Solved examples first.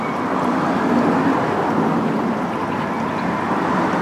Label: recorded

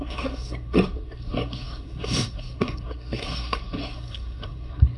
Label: remade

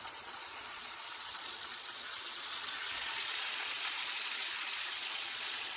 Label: remade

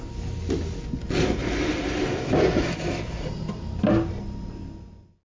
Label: recorded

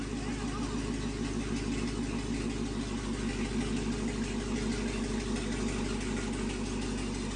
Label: recorded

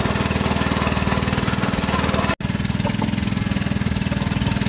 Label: recorded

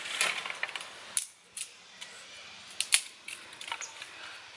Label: recorded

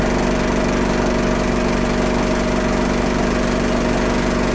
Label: recorded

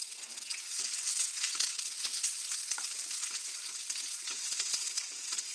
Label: remade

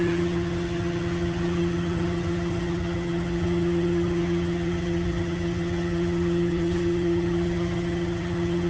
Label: remade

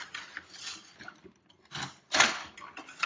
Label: recorded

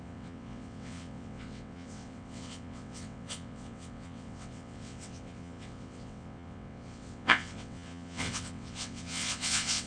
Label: remade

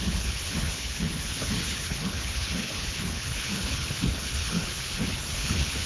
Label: remade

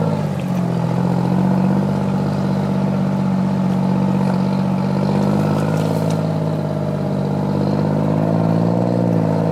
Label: recorded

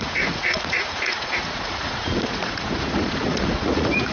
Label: remade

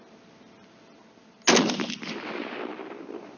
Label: recorded